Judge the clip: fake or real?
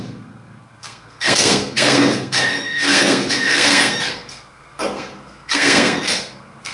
fake